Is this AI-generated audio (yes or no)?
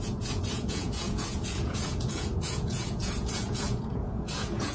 yes